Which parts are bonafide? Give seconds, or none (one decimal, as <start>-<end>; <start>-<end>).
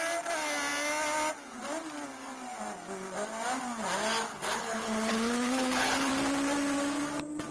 0.0-4.3; 6.1-7.5